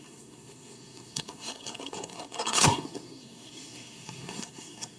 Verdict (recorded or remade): remade